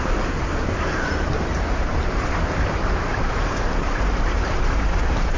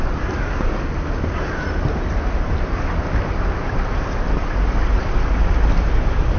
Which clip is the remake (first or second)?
first